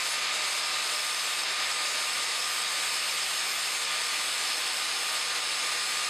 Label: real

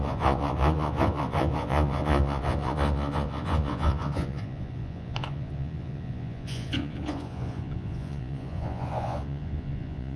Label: fake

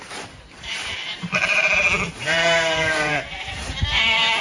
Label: fake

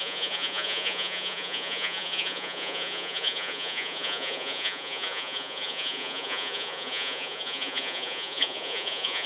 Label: fake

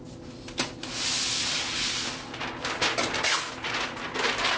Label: real